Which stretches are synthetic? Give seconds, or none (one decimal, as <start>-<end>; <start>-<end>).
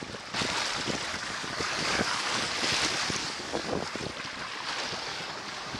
1.1-2.5; 3.2-3.7; 5.1-5.8